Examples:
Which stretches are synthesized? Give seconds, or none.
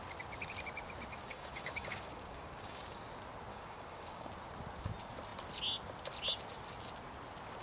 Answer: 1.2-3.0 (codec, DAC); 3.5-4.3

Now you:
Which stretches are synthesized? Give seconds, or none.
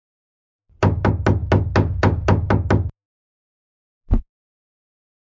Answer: none